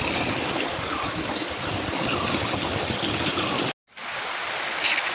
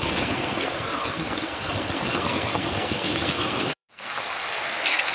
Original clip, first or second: first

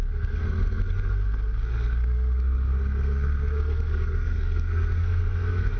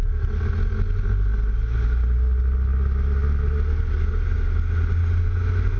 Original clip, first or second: second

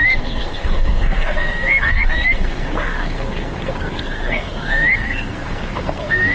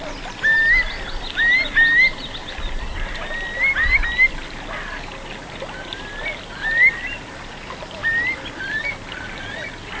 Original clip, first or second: second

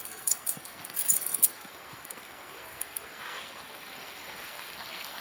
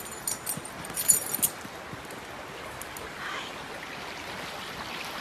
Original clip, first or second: second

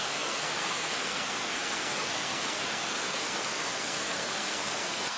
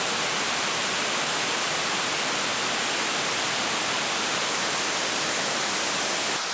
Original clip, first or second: second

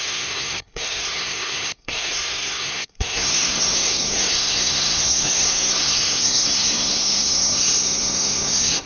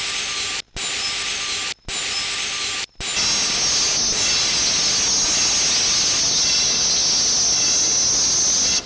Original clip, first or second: second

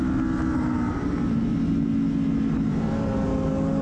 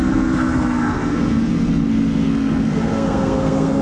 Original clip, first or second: first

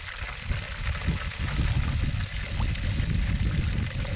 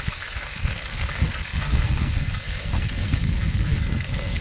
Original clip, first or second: first